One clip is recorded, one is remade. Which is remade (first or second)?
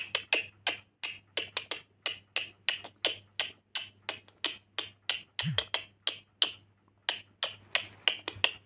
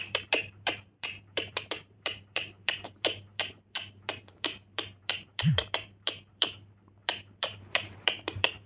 second